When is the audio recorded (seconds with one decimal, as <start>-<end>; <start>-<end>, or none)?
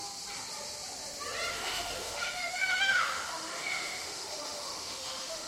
0.0-1.5